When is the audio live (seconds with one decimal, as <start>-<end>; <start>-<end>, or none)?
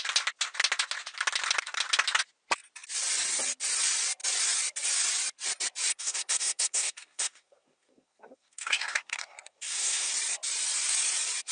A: 0.0-5.9; 10.1-11.5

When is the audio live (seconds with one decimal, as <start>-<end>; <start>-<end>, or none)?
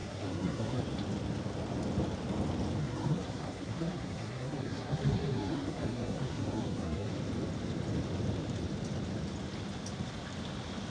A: 0.8-2.8; 7.1-10.9